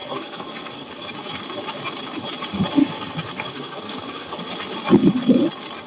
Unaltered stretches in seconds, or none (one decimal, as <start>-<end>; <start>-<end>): 1.1-2.8; 4.5-5.9